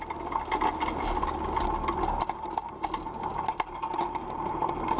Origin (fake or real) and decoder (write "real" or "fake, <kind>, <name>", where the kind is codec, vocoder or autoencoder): real